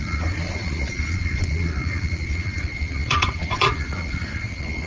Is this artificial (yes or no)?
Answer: yes